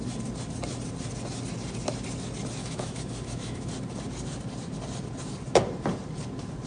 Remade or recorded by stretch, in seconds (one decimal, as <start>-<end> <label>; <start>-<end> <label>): 0.0-2.6 recorded; 2.6-3.7 remade; 3.7-6.7 recorded